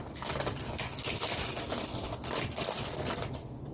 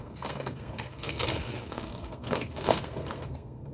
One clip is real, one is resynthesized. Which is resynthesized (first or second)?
second